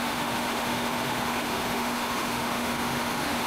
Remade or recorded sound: remade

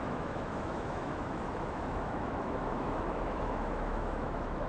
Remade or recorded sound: remade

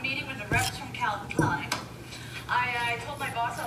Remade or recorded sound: recorded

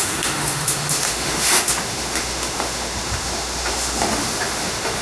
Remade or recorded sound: remade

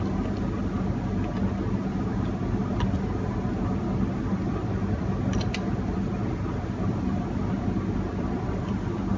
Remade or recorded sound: recorded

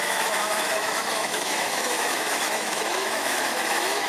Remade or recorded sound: remade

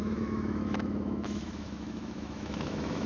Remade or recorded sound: remade